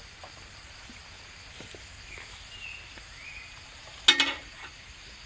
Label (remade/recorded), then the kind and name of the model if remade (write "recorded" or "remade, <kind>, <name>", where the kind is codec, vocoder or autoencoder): recorded